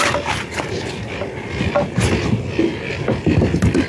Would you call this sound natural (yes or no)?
yes